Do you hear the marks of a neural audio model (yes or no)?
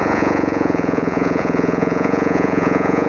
yes